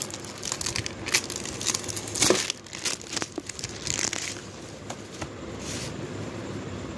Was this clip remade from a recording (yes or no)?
no